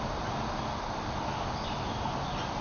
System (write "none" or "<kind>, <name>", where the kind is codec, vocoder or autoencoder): none